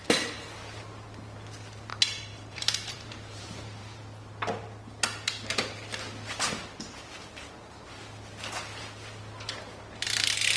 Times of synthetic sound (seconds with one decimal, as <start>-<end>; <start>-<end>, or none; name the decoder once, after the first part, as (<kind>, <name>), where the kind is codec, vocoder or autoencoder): 1.9-4.0 (vocoder, BigVGAN v2)